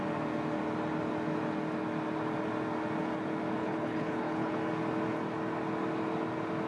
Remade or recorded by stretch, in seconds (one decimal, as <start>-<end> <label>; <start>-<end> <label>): 0.0-3.6 recorded; 3.6-4.5 remade; 4.5-6.7 recorded